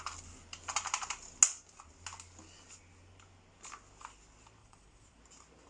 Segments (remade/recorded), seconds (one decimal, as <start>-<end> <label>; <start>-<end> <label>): 0.0-4.6 recorded; 4.6-5.2 remade; 5.2-5.7 recorded